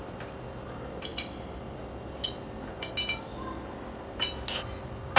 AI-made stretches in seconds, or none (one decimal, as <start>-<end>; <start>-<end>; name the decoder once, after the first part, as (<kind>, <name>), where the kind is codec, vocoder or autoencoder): none